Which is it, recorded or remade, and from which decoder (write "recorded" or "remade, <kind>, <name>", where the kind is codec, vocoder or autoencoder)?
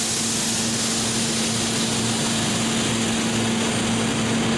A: recorded